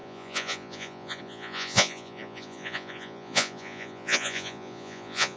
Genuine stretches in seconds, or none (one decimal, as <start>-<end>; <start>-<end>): none